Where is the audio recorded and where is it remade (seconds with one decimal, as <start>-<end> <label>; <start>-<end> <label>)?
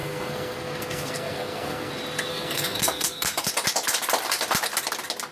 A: 0.0-1.9 remade; 1.9-2.3 recorded; 2.3-3.5 remade; 3.5-5.3 recorded